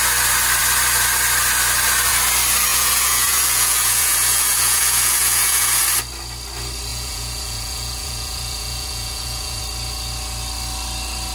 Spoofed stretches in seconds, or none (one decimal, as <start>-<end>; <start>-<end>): 2.7-5.8; 6.9-9.6